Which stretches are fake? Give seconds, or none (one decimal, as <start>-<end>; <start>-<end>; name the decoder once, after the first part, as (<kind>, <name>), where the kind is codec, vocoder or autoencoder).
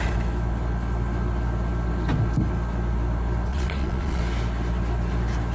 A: 3.5-4.2 (vocoder, Vocos)